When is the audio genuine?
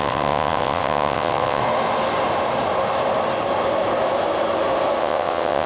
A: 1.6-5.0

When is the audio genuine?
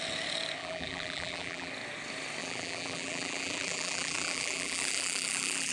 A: 0.0-0.6; 1.7-2.4